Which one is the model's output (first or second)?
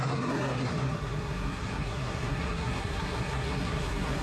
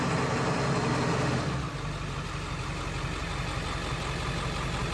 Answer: first